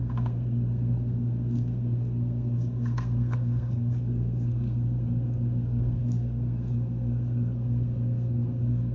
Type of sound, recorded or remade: remade